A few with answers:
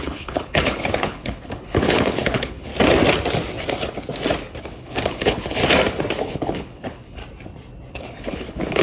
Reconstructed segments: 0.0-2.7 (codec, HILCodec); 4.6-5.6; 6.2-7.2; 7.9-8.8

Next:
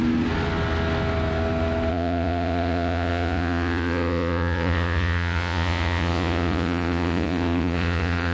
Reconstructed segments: 1.9-8.3 (vocoder, Vocos)

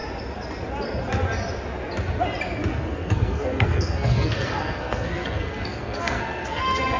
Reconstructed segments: 2.7-7.0 (codec, SNAC)

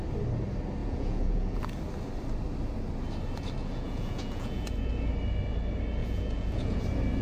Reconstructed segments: 0.8-1.6 (vocoder, Vocos); 3.6-4.9; 6.0-6.8

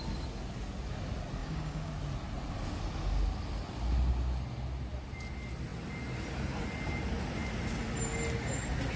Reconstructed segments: 1.4-1.9 (codec, DAC)

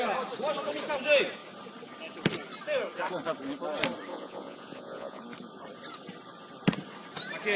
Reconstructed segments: 4.1-5.2 (vocoder, Vocos)